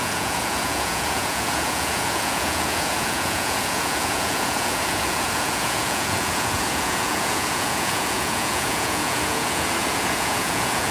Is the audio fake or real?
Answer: fake